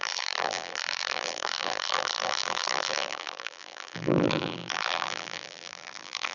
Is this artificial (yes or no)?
yes